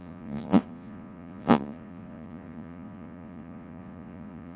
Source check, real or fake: fake